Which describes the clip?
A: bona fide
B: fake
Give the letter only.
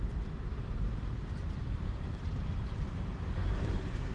B